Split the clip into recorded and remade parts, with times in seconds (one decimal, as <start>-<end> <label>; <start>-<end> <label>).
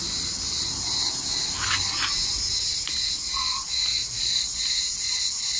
0.0-5.6 recorded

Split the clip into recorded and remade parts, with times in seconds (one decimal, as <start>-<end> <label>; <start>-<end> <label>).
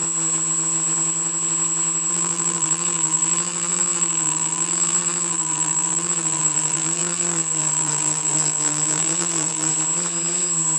0.0-2.1 recorded; 2.1-9.7 remade; 9.7-10.8 recorded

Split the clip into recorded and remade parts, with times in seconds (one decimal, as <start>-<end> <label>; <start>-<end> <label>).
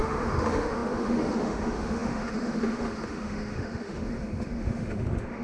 0.0-5.4 remade